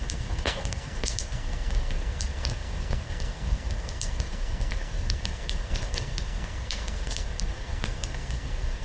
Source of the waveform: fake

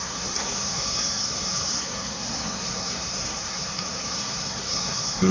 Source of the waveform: fake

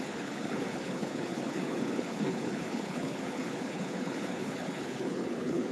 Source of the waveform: fake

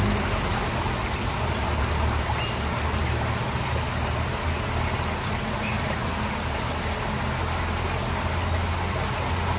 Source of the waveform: real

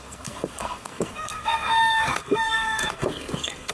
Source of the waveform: fake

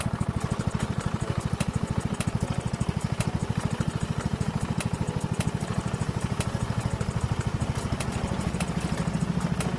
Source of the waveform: real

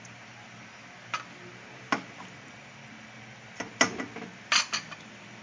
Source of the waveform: real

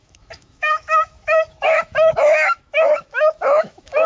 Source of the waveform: fake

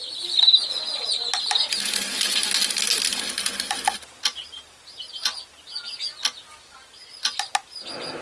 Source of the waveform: real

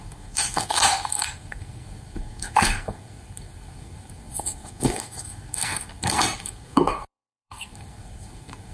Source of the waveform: fake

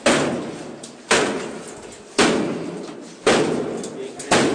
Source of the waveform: real